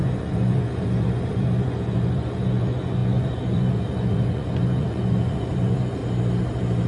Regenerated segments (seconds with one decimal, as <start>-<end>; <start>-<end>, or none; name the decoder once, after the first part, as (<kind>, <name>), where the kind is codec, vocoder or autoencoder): 0.0-6.0 (vocoder, Vocos)